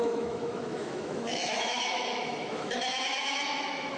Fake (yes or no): yes